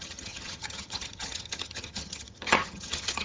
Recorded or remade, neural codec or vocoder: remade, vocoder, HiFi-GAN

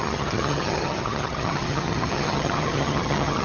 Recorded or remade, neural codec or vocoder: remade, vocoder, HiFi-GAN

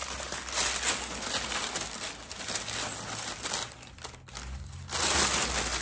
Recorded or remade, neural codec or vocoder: recorded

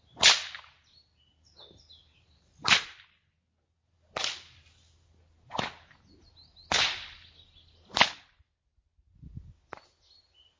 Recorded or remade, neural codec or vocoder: recorded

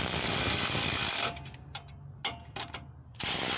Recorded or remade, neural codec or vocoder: recorded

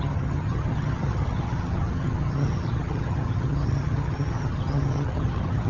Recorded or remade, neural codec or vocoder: remade, vocoder, HiFi-GAN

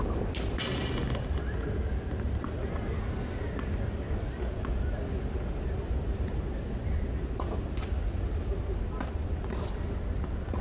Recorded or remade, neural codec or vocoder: recorded